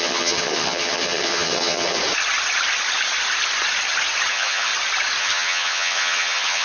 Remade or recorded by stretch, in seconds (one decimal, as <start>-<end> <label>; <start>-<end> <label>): 0.0-2.0 remade; 2.0-4.3 recorded; 4.3-4.7 remade; 4.7-5.2 recorded; 5.2-6.6 remade